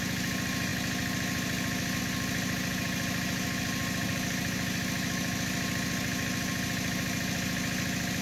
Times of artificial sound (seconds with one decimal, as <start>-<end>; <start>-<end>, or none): none